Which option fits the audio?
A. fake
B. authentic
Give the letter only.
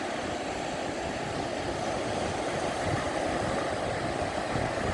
B